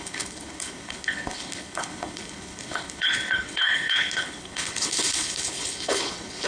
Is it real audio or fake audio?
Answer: fake